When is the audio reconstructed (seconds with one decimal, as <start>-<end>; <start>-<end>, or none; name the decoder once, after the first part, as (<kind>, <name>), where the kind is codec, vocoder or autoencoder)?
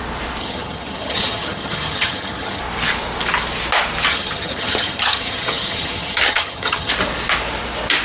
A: 0.4-2.6 (vocoder, HiFi-GAN); 4.1-6.9